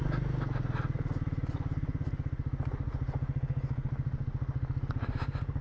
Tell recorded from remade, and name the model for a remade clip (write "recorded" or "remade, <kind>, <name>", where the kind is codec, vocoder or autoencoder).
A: recorded